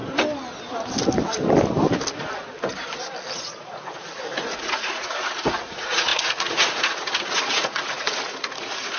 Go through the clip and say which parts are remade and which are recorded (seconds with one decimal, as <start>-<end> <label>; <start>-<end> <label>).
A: 0.0-3.4 recorded; 3.4-9.0 remade